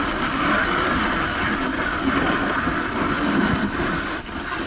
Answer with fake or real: real